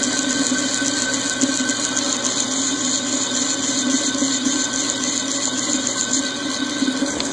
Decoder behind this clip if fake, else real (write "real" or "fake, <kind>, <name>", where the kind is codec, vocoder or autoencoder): real